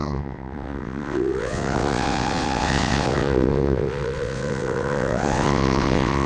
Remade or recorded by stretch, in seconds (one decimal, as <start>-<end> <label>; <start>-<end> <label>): 0.0-6.3 remade